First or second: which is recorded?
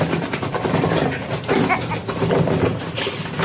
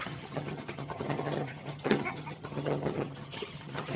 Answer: first